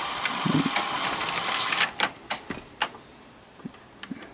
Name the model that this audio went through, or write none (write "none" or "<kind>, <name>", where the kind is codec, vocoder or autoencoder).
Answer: none